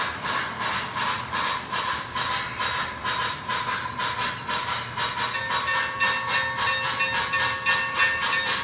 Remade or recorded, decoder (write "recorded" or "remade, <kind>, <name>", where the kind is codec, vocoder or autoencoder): recorded